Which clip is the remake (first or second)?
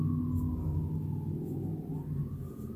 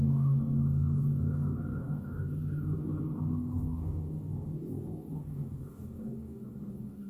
second